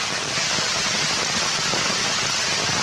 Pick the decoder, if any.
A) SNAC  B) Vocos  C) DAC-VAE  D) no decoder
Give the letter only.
D